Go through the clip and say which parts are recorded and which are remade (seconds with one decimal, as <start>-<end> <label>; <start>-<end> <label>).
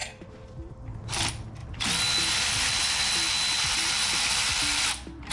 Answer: 0.0-1.0 remade; 1.0-1.6 recorded; 1.6-4.8 remade; 4.8-5.3 recorded